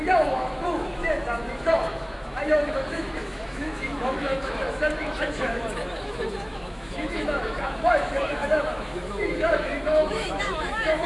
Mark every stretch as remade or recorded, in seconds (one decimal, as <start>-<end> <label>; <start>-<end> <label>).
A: 0.0-11.1 remade